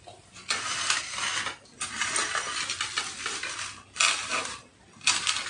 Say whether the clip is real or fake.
real